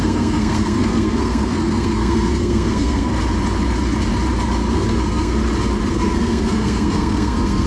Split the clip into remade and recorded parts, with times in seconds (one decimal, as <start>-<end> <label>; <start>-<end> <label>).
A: 0.0-3.1 remade; 3.1-4.7 recorded; 4.7-5.4 remade; 5.4-5.9 recorded; 5.9-7.7 remade